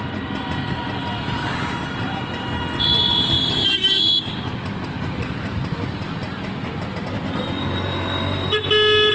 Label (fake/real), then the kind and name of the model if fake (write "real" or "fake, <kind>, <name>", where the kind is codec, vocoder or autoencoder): real